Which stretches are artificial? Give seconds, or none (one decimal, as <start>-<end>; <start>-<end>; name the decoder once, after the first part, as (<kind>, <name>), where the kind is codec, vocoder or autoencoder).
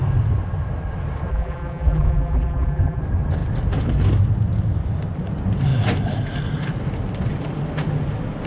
1.3-3.0 (vocoder, BigVGAN v2)